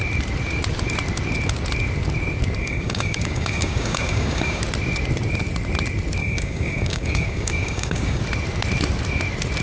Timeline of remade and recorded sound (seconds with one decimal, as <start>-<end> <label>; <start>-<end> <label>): 0.0-2.6 recorded; 2.6-4.6 remade; 4.6-6.2 recorded; 6.2-8.2 remade; 8.2-9.6 recorded